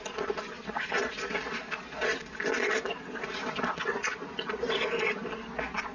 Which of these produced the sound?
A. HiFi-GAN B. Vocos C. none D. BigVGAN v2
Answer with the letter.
C